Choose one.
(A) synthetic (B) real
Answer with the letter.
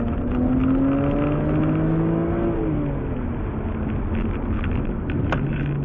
B